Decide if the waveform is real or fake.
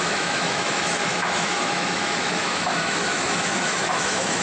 fake